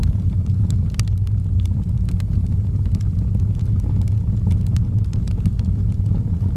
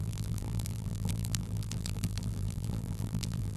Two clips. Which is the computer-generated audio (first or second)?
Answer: second